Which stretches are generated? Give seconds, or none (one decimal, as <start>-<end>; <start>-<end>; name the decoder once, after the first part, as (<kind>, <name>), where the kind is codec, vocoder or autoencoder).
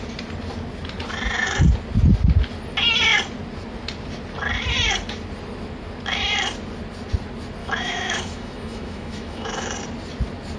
7.6-9.7 (autoencoder, DAC-VAE)